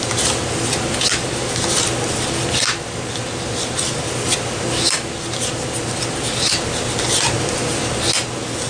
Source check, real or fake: real